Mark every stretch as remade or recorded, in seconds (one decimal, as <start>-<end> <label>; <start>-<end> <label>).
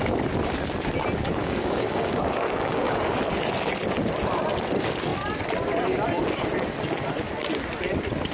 0.0-1.4 recorded; 1.4-3.1 remade; 3.1-8.3 recorded